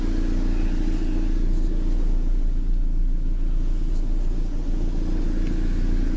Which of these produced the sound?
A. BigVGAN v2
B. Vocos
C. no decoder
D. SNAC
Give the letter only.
C